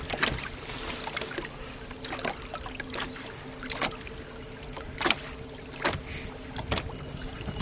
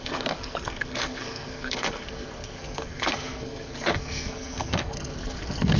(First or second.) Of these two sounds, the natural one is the first